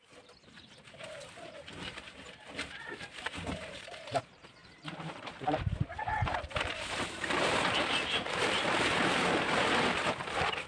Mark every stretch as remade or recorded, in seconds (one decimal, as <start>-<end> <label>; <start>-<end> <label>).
0.0-10.7 remade